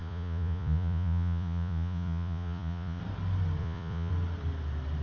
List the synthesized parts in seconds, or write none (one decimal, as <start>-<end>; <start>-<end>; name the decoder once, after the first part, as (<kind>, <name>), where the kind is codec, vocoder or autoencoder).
0.0-3.0 (vocoder, Vocos); 3.6-4.1